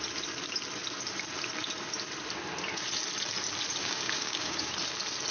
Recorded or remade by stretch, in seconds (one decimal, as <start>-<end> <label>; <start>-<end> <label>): 0.0-3.8 recorded; 3.8-4.7 remade; 4.7-5.3 recorded